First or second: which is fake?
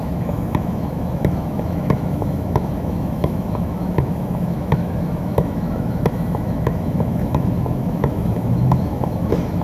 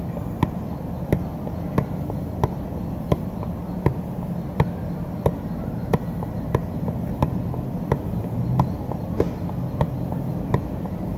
first